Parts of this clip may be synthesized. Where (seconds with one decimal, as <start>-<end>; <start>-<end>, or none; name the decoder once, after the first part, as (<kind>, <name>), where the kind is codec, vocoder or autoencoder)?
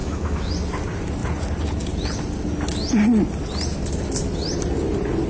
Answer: 0.0-0.5 (autoencoder, DAC-VAE)